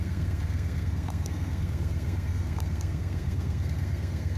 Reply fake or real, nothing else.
fake